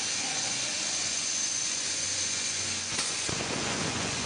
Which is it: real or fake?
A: fake